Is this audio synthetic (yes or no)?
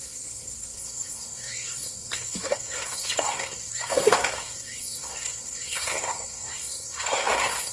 yes